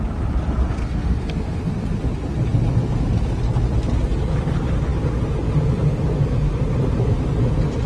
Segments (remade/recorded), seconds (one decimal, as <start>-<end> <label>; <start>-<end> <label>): 0.0-0.8 recorded; 0.8-1.7 remade; 1.7-7.9 recorded